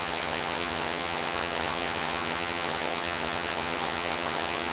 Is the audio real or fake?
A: fake